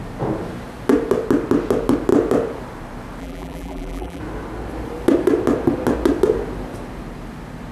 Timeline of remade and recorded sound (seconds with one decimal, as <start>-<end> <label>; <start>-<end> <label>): 0.0-3.2 recorded; 3.2-4.2 remade; 4.2-7.7 recorded